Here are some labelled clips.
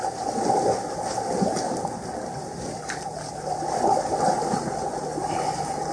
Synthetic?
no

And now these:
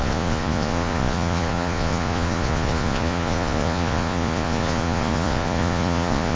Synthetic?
yes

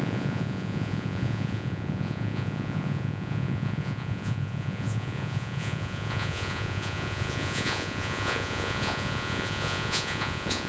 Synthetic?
yes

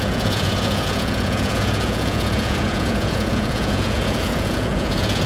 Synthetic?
yes